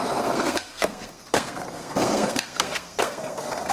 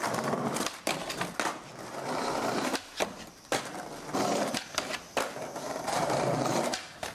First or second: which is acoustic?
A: second